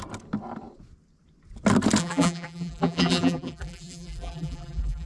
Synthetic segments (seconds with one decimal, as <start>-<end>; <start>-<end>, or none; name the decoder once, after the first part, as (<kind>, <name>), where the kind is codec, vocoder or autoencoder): 2.0-5.1 (vocoder, BigVGAN v2)